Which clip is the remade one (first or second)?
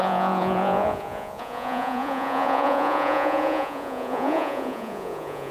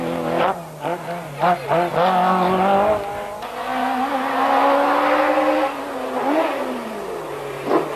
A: first